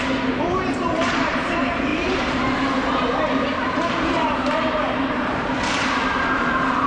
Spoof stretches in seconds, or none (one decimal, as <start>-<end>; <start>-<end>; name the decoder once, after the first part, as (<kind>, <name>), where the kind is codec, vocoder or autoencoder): 0.0-6.9 (vocoder, BigVGAN v2)